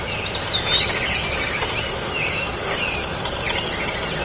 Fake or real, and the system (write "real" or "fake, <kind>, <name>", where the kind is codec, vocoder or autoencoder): real